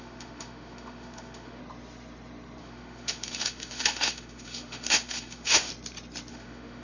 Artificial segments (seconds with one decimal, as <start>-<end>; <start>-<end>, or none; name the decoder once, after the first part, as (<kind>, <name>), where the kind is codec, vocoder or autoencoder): 0.0-1.6 (autoencoder, DAC-VAE); 2.6-5.7; 6.3-6.8